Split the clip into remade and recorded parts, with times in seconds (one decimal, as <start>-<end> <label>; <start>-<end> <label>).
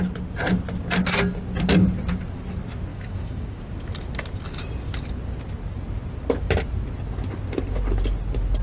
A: 0.0-2.9 recorded; 2.9-3.6 remade; 3.6-8.6 recorded